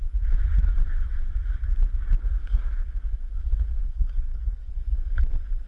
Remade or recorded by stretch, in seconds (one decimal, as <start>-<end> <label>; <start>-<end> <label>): 0.0-3.8 recorded; 3.8-4.7 remade; 4.7-5.7 recorded